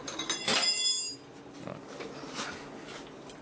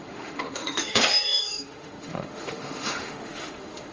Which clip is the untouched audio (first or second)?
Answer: first